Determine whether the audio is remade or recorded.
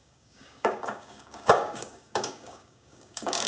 remade